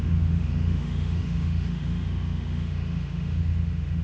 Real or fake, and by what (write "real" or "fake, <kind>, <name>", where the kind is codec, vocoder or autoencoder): fake, autoencoder, DAC-VAE